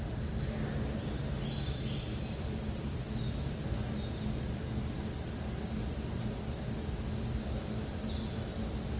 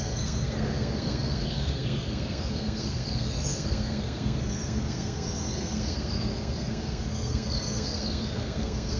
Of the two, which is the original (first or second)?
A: first